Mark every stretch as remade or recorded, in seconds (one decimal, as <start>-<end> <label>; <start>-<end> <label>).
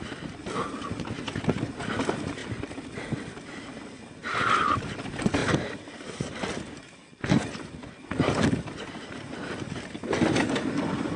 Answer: 0.0-5.4 recorded; 5.4-6.3 remade; 6.3-11.2 recorded